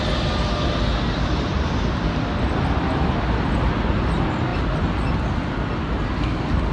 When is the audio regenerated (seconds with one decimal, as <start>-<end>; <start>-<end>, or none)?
none